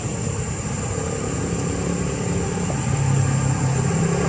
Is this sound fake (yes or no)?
no